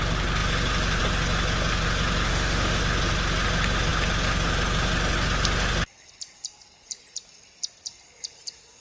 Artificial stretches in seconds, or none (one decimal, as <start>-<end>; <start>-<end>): 2.3-2.8